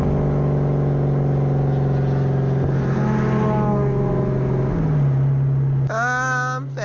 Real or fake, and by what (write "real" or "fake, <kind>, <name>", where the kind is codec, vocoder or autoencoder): real